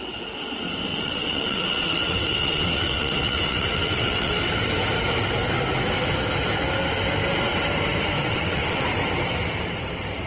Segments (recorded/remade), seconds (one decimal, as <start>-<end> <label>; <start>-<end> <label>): 0.0-0.9 recorded; 0.9-4.3 remade; 4.3-8.2 recorded; 8.2-8.8 remade; 8.8-10.3 recorded